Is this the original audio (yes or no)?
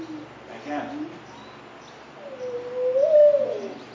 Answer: yes